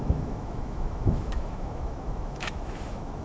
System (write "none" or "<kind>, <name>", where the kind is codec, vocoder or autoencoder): autoencoder, DAC-VAE